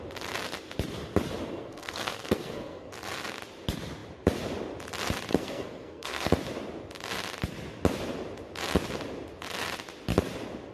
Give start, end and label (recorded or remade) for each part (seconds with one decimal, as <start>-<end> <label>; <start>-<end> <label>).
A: 0.0-1.5 recorded; 1.5-2.9 remade; 2.9-5.3 recorded; 5.3-6.3 remade; 6.3-10.7 recorded